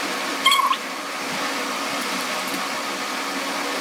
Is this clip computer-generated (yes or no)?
no